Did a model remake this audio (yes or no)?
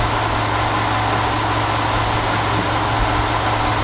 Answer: no